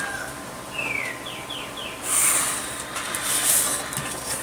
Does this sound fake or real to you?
real